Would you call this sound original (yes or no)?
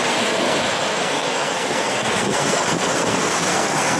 no